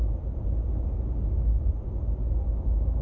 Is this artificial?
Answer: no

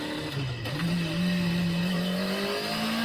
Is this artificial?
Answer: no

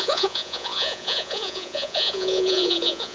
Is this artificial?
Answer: yes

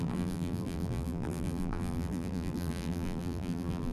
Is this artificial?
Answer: yes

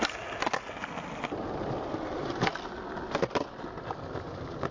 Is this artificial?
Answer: no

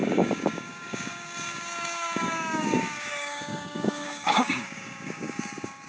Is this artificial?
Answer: yes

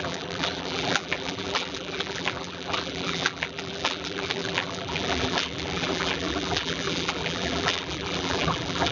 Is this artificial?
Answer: yes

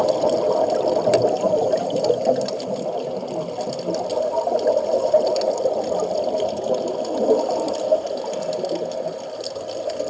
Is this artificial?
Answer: no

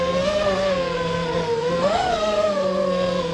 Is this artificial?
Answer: yes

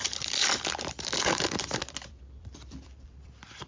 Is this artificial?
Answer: yes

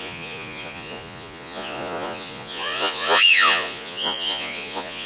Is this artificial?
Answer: yes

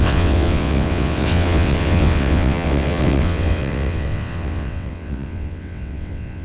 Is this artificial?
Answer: yes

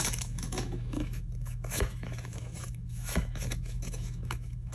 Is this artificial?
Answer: yes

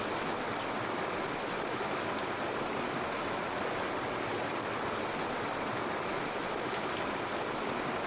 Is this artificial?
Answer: no